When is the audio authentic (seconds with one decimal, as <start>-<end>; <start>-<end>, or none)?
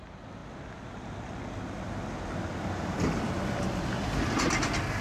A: 0.0-5.0